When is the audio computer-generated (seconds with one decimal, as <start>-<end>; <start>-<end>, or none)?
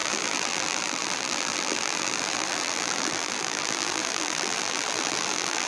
0.0-5.7